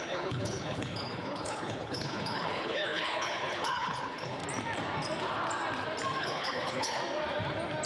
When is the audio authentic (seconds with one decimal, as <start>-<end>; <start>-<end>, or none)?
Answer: 4.4-6.2; 7.0-7.9

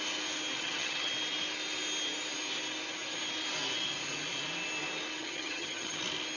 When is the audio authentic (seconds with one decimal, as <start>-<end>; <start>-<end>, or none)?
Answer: 0.0-0.6; 1.1-5.2; 6.0-6.4

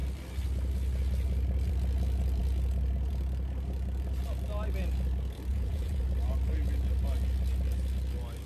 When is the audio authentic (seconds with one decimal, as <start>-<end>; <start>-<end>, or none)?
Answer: 0.0-5.5; 6.0-8.5

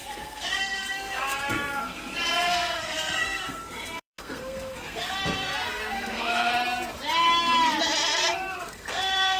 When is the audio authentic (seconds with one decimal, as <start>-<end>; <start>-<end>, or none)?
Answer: 6.5-8.6

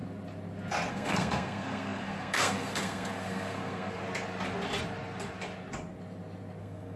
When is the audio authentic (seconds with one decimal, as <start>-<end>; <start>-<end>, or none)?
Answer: 0.0-0.9; 4.0-6.6

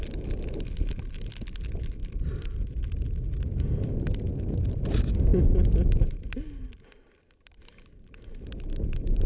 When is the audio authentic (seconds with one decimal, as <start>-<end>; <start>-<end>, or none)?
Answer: 0.0-9.3

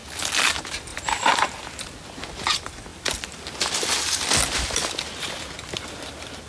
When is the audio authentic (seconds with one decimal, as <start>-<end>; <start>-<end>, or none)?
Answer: 0.0-0.9; 1.8-6.5

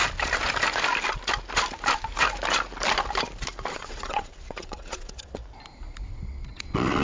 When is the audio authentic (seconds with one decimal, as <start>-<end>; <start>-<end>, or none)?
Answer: 0.0-3.7; 5.4-6.1